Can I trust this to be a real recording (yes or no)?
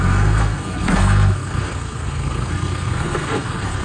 no